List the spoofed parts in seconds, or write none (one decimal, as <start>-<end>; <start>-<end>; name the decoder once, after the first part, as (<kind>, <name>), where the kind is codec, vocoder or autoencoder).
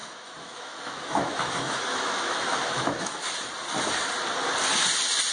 0.0-3.2 (autoencoder, DAC-VAE)